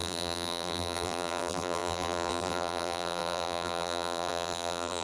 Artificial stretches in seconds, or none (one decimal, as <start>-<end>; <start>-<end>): 0.0-5.0